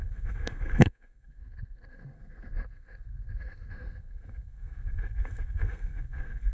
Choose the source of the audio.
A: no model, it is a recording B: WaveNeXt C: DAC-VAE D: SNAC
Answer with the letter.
D